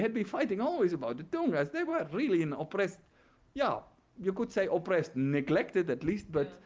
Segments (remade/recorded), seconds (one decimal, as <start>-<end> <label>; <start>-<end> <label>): 0.0-6.7 recorded